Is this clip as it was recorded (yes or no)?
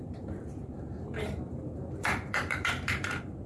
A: no